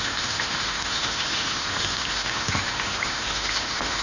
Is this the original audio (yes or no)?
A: no